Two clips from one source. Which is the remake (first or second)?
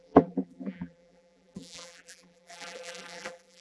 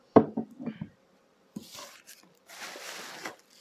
first